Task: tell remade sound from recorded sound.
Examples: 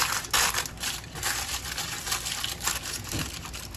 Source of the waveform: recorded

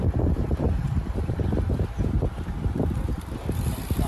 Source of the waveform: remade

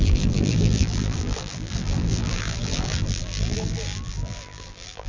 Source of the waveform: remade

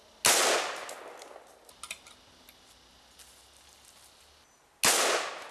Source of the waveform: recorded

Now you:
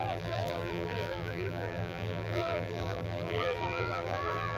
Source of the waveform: remade